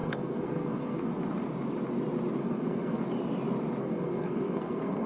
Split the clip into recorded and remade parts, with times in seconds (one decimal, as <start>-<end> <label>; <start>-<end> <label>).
0.0-1.1 remade; 1.1-2.4 recorded; 2.4-3.0 remade; 3.0-3.8 recorded; 3.8-5.1 remade